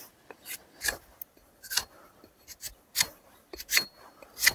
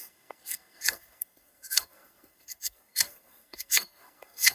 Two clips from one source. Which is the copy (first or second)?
second